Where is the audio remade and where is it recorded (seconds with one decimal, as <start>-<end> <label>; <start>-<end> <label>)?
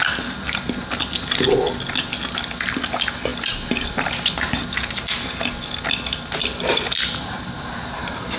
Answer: 0.0-8.4 recorded